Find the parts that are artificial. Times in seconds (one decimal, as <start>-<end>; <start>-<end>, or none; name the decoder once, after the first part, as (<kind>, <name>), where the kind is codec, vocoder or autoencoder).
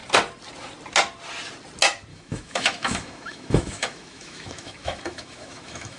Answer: 2.1-6.0 (autoencoder, DAC-VAE)